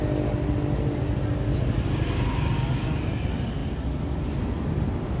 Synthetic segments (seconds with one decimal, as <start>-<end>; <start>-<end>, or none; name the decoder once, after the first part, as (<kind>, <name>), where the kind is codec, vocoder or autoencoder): none